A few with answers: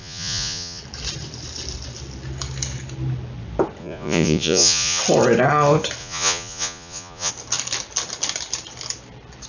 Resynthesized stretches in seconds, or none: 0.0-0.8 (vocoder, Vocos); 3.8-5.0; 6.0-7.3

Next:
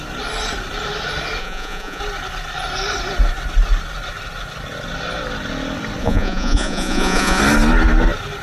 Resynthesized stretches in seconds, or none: 1.4-2.0 (vocoder, Vocos); 6.0-7.4

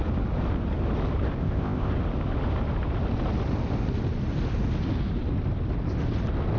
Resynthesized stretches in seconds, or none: 1.4-1.9 (codec, ZipCodec)

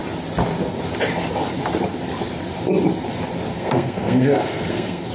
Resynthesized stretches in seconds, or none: 3.5-5.1 (codec, SNAC)

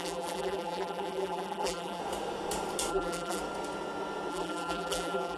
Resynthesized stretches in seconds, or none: 0.0-2.0 (vocoder, BigVGAN v2); 2.9-3.4; 4.3-5.4